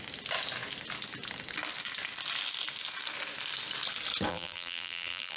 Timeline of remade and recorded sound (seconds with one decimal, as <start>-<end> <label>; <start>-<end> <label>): 0.0-4.3 recorded; 4.3-5.4 remade